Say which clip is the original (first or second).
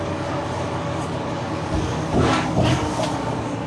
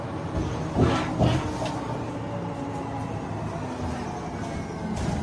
second